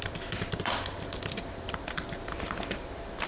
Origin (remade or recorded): remade